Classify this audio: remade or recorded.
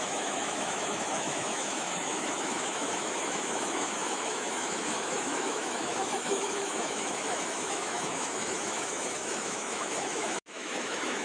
remade